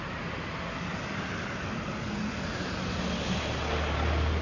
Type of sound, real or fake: real